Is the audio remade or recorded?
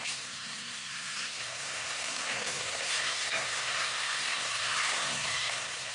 remade